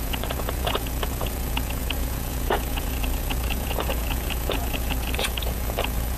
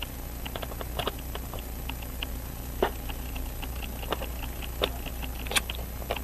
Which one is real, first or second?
second